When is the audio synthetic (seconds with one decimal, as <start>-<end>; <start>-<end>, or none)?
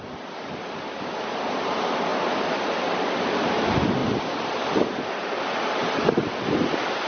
none